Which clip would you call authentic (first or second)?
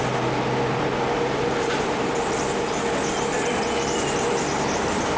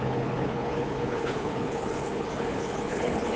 first